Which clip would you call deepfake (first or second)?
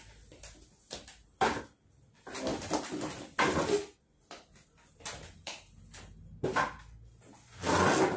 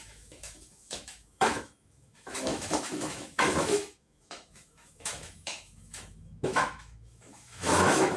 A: second